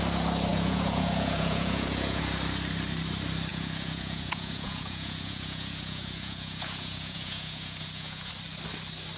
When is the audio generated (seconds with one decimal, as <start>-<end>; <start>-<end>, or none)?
0.5-2.2; 3.5-8.3